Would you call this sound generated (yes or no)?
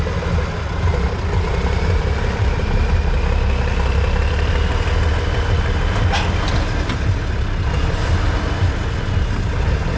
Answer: no